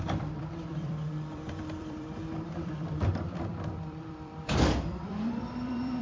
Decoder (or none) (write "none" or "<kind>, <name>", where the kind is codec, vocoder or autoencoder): vocoder, BigVGAN v2